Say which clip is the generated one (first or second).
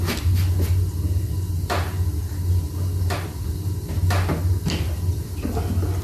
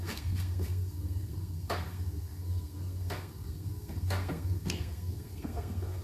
second